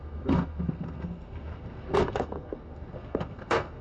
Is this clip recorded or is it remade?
remade